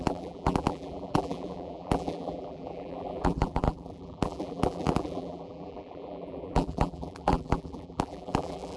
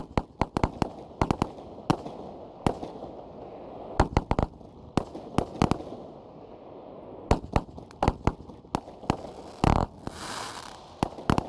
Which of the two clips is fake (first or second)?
first